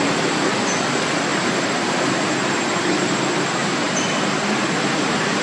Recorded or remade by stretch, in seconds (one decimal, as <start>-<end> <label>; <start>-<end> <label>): 0.0-1.3 recorded; 1.3-2.3 remade; 2.3-3.6 recorded; 3.6-5.4 remade